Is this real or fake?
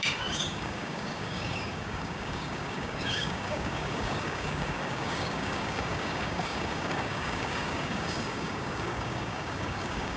fake